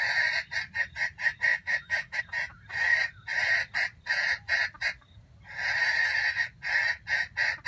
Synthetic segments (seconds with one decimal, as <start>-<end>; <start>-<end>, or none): 1.5-2.2